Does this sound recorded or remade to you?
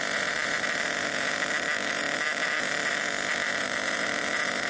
remade